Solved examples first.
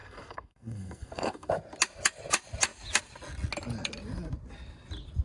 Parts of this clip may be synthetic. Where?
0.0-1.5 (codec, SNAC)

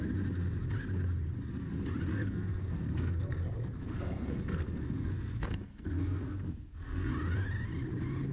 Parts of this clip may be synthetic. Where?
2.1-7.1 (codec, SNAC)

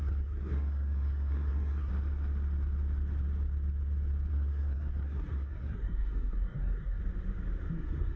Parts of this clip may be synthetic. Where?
0.0-1.9 (codec, SNAC); 4.3-7.0; 7.7-8.2